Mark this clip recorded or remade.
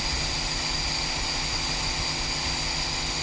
recorded